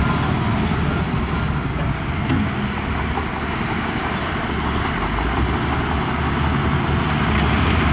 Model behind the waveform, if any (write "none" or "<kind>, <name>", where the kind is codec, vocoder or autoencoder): none